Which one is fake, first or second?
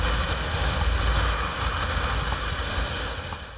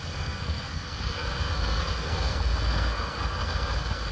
second